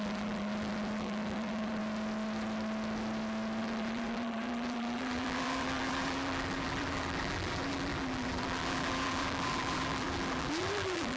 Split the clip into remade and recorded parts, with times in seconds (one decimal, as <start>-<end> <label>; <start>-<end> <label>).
0.0-1.8 remade; 1.8-3.6 recorded; 3.6-11.2 remade